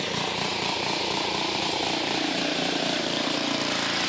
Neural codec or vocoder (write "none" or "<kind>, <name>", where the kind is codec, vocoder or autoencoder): vocoder, BigVGAN v2